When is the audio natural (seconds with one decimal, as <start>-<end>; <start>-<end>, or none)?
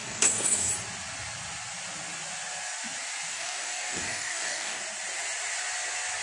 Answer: 0.7-3.3; 4.8-6.2